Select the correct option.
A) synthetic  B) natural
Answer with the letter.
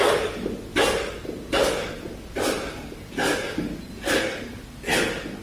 B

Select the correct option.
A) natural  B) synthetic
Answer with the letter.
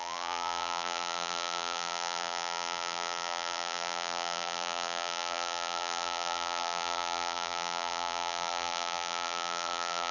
B